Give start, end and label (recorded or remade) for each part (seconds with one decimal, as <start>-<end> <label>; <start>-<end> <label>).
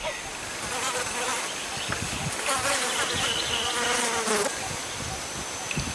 0.0-1.3 recorded; 1.3-4.8 remade; 4.8-5.9 recorded